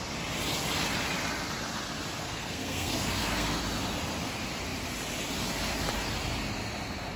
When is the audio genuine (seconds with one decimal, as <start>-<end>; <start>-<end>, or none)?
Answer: 0.0-2.2; 3.6-7.2